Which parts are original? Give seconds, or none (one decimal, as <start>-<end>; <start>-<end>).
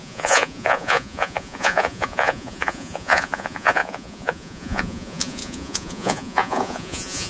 none